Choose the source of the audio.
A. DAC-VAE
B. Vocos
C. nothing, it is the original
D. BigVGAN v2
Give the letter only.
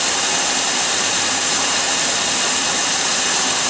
D